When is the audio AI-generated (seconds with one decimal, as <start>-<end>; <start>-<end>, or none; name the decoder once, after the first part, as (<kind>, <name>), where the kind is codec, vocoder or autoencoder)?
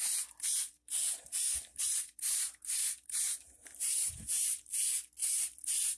1.0-4.6 (vocoder, BigVGAN v2); 5.2-6.0